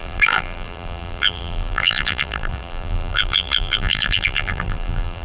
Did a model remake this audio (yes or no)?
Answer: yes